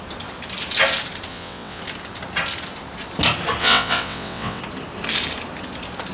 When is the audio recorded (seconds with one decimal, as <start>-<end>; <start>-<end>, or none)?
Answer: 0.0-1.3; 1.8-3.6; 4.6-6.1